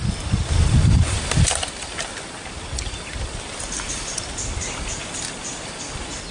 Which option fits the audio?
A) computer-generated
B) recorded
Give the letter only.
B